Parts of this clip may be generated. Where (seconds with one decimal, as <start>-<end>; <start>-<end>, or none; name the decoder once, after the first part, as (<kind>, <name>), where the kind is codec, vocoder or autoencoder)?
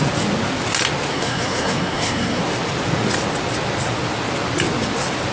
1.1-2.4 (codec, SNAC)